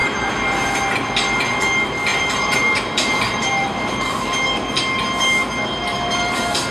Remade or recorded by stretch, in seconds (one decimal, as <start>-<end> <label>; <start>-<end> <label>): 0.0-0.8 remade; 0.8-2.1 recorded; 2.1-4.8 remade; 4.8-5.7 recorded; 5.7-6.7 remade